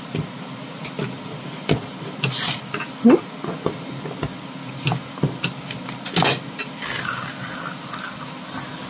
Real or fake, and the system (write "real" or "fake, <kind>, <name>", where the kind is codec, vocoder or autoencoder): real